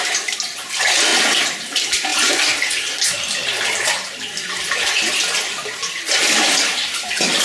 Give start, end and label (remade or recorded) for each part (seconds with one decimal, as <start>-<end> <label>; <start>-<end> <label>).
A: 0.0-2.1 recorded; 2.1-5.8 remade; 5.8-6.7 recorded; 6.7-7.4 remade